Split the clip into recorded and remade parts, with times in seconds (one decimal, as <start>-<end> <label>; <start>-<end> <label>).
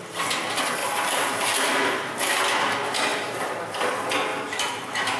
0.0-0.8 recorded; 0.8-2.4 remade; 2.4-3.1 recorded; 3.1-3.8 remade; 3.8-4.3 recorded; 4.3-5.2 remade